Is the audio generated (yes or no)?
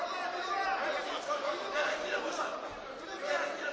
no